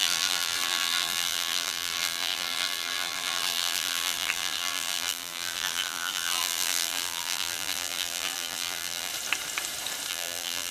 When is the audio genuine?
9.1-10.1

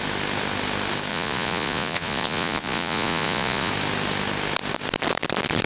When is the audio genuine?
0.0-1.1; 3.7-5.7

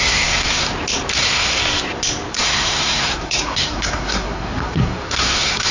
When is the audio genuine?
0.7-1.2; 1.6-2.3

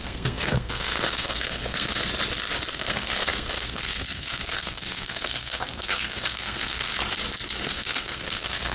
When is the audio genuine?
2.1-2.7; 6.9-7.7

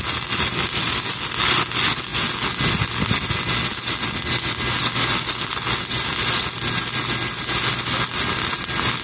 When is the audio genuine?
0.0-9.0